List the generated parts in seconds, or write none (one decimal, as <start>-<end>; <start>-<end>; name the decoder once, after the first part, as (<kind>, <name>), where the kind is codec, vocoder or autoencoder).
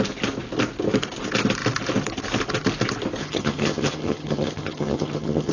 3.2-5.5 (vocoder, HiFi-GAN)